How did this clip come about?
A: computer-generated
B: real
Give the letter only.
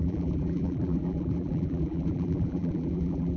A